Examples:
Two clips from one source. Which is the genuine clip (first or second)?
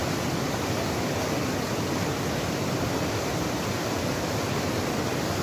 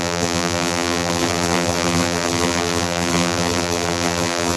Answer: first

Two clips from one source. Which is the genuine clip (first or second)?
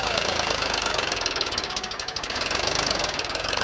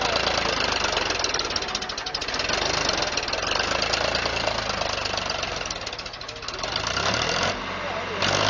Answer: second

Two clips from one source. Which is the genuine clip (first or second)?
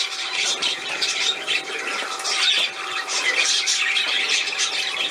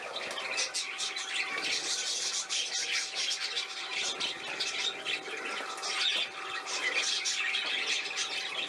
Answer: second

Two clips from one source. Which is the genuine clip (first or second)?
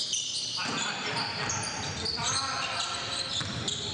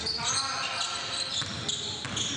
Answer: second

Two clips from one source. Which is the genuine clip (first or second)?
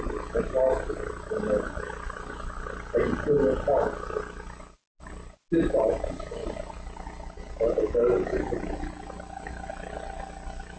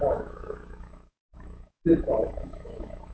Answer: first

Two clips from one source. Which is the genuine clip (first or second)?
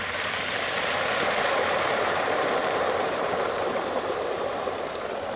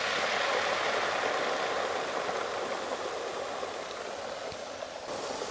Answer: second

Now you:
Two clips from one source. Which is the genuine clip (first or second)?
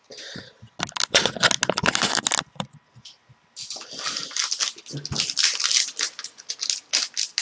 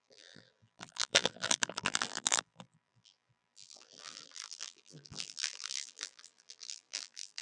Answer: first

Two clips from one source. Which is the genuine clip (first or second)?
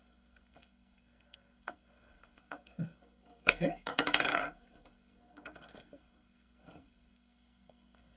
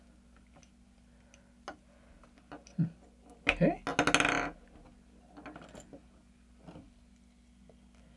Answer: second